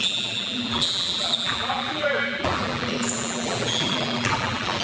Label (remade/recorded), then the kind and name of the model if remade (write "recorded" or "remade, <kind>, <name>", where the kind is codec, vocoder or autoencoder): remade, vocoder, BigVGAN v2